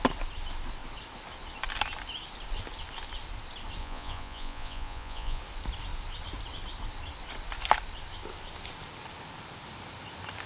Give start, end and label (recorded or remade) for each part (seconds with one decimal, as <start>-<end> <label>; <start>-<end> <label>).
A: 0.0-3.8 recorded; 3.8-5.4 remade; 5.4-10.5 recorded